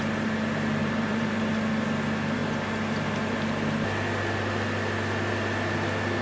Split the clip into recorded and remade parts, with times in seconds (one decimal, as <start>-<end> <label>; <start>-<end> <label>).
0.0-0.8 recorded; 0.8-1.4 remade; 1.4-6.2 recorded